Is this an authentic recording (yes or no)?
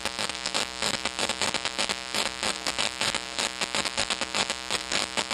no